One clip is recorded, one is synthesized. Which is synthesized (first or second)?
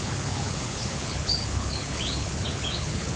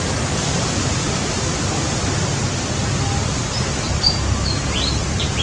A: first